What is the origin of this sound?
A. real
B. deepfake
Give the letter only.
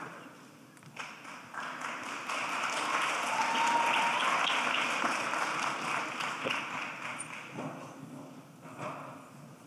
A